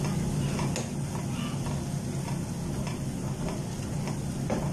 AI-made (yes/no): no